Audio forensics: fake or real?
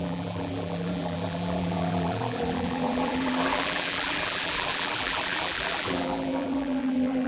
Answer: fake